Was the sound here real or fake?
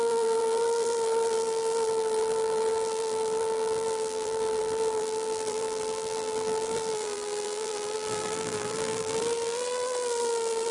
fake